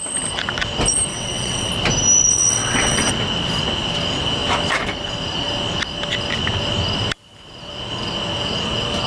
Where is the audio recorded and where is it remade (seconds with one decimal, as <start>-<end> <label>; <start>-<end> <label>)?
0.0-1.1 recorded; 1.1-1.7 remade; 1.7-2.3 recorded; 2.3-3.1 remade; 3.1-9.1 recorded